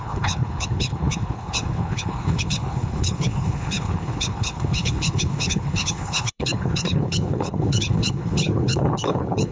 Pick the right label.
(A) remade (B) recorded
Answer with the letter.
A